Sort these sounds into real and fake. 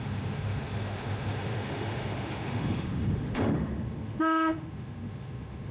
fake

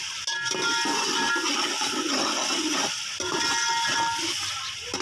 real